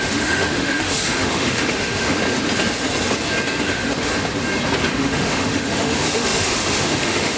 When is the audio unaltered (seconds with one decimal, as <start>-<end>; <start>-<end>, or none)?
2.2-3.6; 4.1-4.9